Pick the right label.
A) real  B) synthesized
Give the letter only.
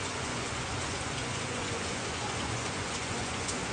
B